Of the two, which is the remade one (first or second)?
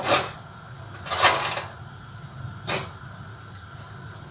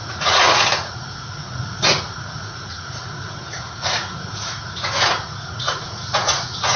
second